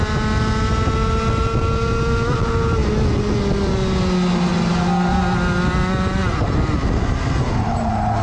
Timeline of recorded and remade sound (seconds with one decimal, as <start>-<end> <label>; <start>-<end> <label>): 0.0-8.2 recorded